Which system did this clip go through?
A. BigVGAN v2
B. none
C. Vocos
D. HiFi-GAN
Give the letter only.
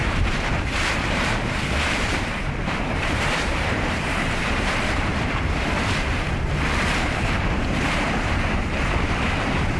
A